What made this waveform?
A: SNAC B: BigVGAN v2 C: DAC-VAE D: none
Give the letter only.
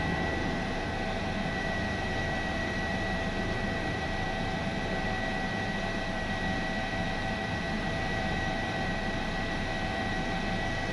B